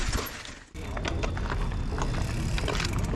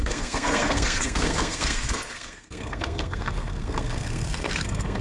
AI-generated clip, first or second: second